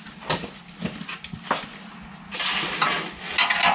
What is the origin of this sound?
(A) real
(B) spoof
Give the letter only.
A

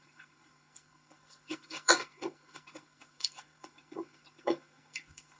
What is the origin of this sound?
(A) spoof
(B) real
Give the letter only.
A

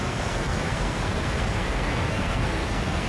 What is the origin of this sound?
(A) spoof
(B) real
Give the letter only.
A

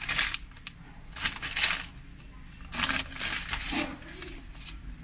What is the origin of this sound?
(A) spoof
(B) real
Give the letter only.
B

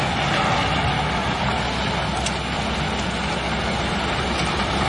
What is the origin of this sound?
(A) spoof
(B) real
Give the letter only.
B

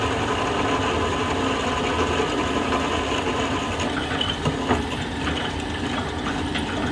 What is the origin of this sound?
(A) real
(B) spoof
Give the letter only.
A